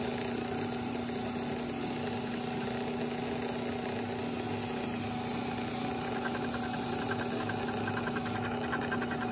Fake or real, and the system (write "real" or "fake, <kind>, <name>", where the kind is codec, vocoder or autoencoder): real